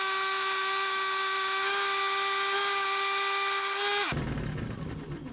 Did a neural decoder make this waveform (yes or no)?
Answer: no